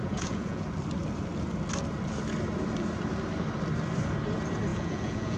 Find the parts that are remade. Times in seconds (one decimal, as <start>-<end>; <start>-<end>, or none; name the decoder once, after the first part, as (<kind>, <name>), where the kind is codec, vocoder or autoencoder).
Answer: 0.0-0.6 (vocoder, Vocos); 4.7-5.4